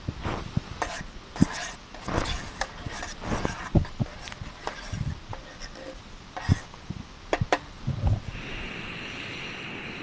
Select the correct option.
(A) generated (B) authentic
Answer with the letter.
B